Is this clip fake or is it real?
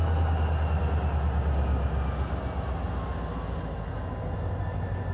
real